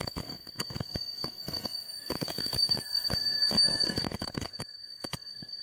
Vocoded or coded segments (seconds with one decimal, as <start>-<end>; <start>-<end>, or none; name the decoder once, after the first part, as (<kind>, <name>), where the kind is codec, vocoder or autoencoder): 0.0-5.6 (codec, SNAC)